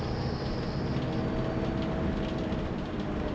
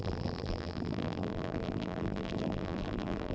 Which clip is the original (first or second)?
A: first